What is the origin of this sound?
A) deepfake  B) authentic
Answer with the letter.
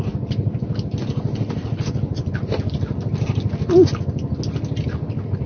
B